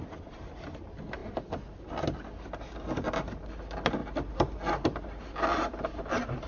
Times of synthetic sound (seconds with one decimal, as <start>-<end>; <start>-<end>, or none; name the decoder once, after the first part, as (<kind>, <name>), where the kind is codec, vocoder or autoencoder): none